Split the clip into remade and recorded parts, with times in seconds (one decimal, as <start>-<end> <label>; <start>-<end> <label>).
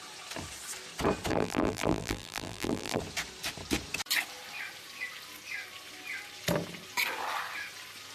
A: 0.0-1.3 recorded; 1.3-3.0 remade; 3.0-8.1 recorded